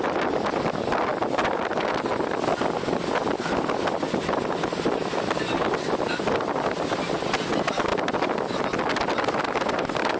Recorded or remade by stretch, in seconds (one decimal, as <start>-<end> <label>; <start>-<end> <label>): 0.0-10.2 recorded